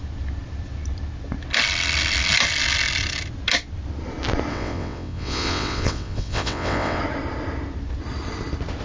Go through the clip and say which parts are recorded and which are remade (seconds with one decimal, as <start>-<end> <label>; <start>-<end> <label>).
0.0-4.5 recorded; 4.5-7.0 remade; 7.0-8.8 recorded

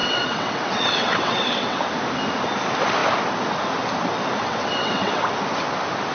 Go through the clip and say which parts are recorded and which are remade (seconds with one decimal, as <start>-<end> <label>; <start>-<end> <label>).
0.0-1.8 remade; 1.8-4.4 recorded; 4.4-5.2 remade; 5.2-6.1 recorded

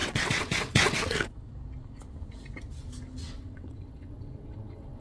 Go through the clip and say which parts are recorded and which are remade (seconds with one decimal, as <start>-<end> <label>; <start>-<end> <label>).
0.0-1.3 remade; 1.3-3.2 recorded; 3.2-5.0 remade